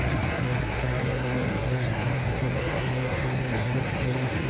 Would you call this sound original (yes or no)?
no